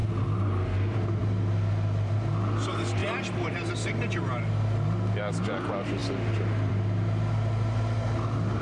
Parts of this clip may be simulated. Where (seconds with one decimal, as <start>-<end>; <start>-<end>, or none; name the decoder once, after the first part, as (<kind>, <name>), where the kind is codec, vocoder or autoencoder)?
none